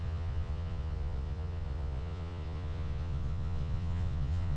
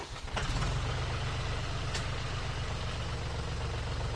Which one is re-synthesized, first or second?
first